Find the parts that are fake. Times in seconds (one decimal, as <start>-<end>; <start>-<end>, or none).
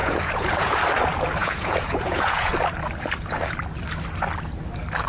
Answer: 0.0-0.8; 1.4-2.5